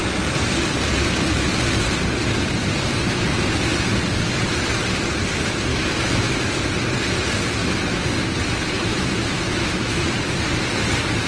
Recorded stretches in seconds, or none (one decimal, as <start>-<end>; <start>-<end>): 0.0-5.7; 6.6-7.6; 8.3-8.9; 10.0-11.3